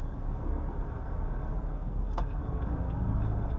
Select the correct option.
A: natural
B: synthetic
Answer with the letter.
B